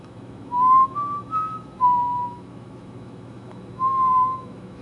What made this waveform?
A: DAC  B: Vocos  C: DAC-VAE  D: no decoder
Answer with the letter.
C